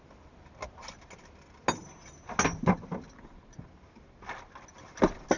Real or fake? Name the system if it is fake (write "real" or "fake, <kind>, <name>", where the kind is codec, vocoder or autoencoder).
real